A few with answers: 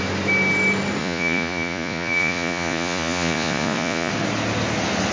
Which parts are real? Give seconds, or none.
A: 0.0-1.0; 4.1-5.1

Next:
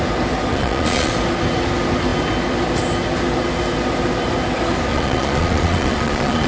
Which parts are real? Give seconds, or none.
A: 0.0-0.5; 1.1-4.9

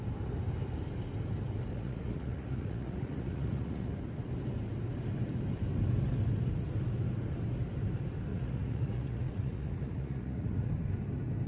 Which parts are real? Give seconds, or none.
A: 0.0-1.7; 3.9-8.3; 10.7-11.5

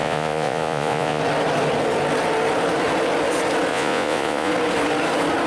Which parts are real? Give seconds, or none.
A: 1.2-3.7; 4.5-5.5

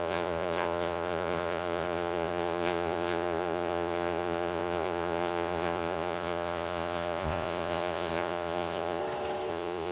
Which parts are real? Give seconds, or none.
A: 9.0-9.5

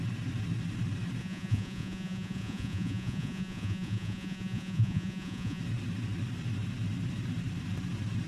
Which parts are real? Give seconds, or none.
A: 0.0-1.2; 5.6-8.3

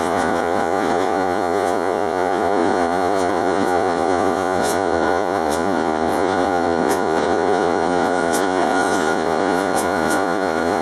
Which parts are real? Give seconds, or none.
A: none

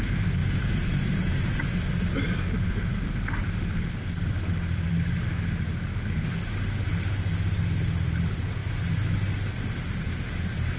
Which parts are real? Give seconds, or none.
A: 0.0-0.4; 1.3-10.8